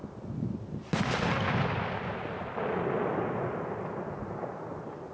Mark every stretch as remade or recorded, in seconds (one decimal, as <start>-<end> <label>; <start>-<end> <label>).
0.0-5.1 recorded

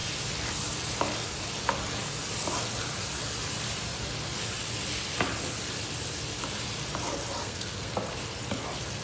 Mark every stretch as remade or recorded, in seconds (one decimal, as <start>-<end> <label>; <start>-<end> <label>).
0.0-7.4 recorded; 7.4-7.9 remade; 7.9-9.0 recorded